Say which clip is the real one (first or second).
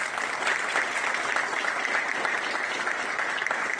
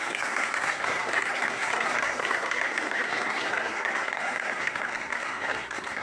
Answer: first